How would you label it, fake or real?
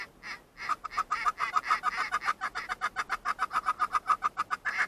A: real